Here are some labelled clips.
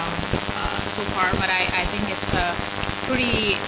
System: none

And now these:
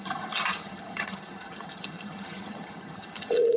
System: vocoder, HiFi-GAN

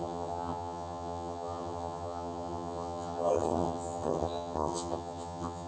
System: vocoder, HiFi-GAN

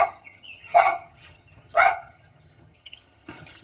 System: vocoder, HiFi-GAN